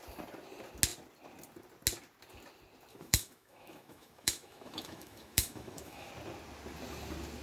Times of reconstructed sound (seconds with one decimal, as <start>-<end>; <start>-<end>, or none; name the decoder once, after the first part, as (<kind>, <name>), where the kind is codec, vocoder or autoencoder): 2.9-6.1 (autoencoder, DAC-VAE)